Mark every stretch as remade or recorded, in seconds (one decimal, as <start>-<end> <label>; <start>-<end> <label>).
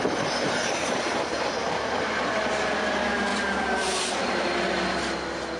0.0-3.3 recorded; 3.3-4.0 remade; 4.0-5.6 recorded